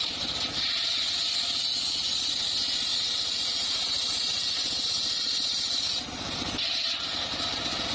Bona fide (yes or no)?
yes